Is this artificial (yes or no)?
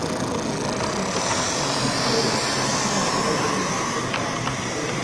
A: no